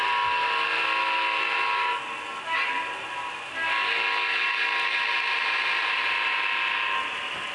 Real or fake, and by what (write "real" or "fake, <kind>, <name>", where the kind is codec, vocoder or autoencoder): real